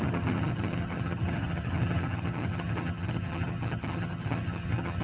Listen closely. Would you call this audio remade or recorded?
remade